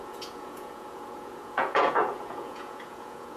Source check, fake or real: fake